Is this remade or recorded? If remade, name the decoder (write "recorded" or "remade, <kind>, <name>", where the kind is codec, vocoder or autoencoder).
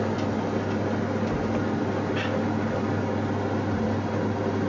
recorded